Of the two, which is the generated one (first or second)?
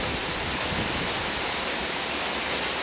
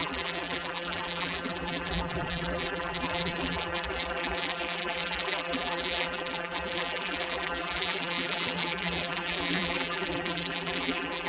second